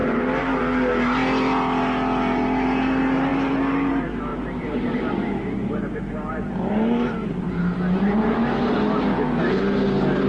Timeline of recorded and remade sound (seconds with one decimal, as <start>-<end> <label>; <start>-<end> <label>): 0.0-0.6 remade; 0.6-4.3 recorded; 4.3-8.7 remade; 8.7-10.3 recorded